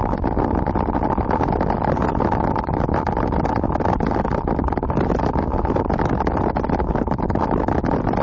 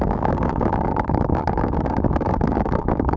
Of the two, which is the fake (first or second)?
second